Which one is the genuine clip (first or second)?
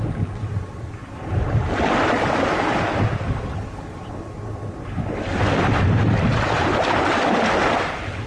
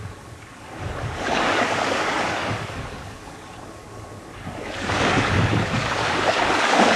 first